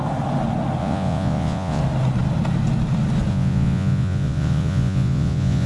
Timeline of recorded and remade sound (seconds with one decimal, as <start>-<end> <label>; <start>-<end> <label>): 0.0-0.8 recorded; 0.8-1.8 remade; 1.8-3.3 recorded; 3.3-5.7 remade